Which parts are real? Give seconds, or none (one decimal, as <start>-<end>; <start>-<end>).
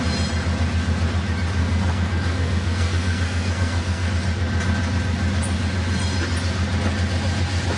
0.0-1.6; 4.1-7.8